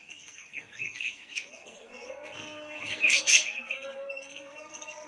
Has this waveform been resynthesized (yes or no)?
yes